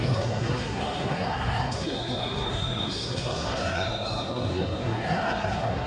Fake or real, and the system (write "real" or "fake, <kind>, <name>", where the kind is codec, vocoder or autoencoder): fake, codec, SNAC